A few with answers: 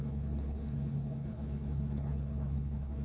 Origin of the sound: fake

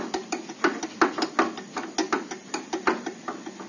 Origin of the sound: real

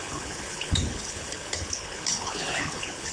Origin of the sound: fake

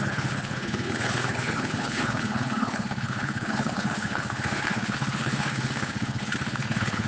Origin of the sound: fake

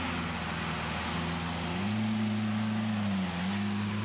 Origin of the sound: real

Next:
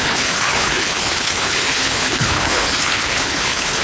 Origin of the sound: fake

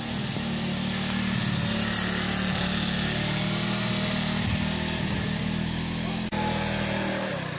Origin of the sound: real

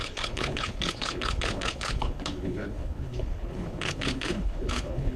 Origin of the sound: fake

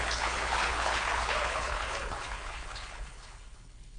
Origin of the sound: fake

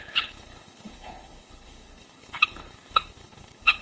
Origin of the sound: fake